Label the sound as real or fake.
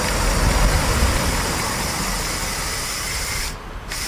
real